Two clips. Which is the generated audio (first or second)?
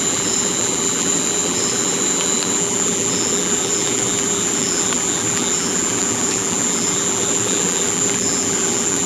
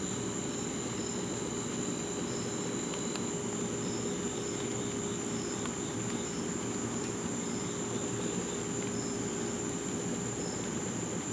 first